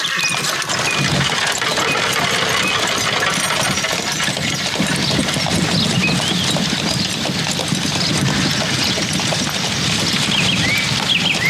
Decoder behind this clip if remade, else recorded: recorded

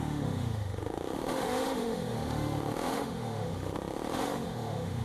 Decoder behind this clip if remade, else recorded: remade, autoencoder, DAC-VAE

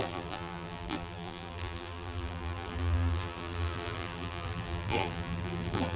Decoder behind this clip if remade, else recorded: remade, vocoder, BigVGAN v2